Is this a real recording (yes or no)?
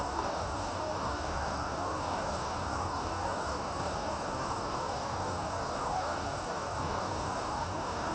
no